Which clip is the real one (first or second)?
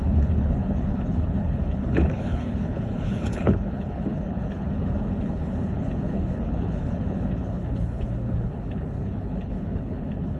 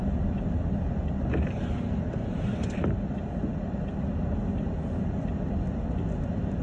second